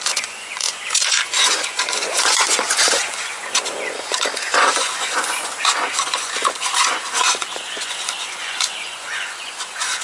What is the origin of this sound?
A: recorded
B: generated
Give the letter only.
B